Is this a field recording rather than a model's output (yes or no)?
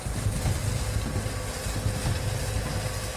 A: yes